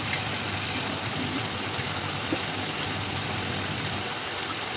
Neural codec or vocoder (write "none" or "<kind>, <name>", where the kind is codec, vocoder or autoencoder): none